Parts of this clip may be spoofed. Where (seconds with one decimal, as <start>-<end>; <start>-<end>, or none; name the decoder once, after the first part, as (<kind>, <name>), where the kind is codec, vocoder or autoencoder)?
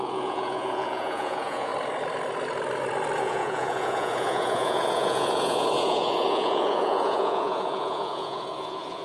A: 0.0-1.7 (vocoder, Vocos); 3.2-9.0